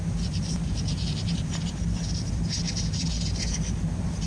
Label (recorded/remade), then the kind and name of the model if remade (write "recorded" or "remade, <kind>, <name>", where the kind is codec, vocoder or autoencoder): recorded